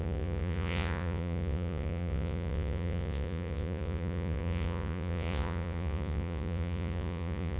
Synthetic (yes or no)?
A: yes